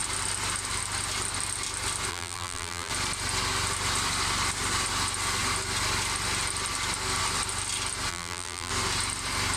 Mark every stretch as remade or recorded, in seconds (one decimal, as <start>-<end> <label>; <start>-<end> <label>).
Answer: 0.0-2.1 recorded; 2.1-2.9 remade; 2.9-8.1 recorded; 8.1-8.7 remade; 8.7-9.6 recorded